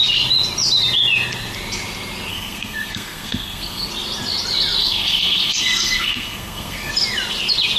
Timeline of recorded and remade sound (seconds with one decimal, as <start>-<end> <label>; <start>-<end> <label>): 0.0-2.3 recorded; 2.3-3.9 remade; 3.9-4.8 recorded; 4.8-6.9 remade; 6.9-7.8 recorded